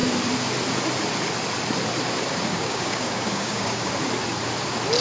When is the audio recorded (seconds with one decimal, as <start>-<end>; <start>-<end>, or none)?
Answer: 0.0-2.5; 3.9-5.0